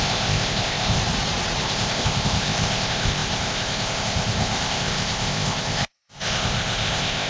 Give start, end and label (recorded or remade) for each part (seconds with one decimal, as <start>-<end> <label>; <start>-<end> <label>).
0.0-1.0 remade; 1.0-1.6 recorded; 1.6-7.3 remade